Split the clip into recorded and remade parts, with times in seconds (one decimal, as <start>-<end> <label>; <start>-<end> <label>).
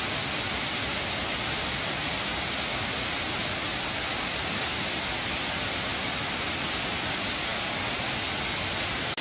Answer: 0.0-2.3 remade; 2.3-3.1 recorded; 3.1-3.7 remade; 3.7-4.2 recorded; 4.2-5.9 remade; 5.9-6.6 recorded; 6.6-7.5 remade; 7.5-9.2 recorded